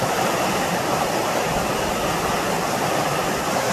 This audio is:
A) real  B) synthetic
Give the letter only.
A